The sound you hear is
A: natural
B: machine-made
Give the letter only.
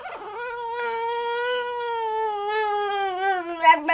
A